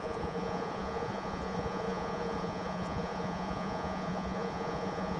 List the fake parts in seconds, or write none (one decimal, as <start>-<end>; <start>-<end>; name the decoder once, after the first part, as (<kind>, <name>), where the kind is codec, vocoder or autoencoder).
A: 0.0-5.2 (vocoder, Vocos)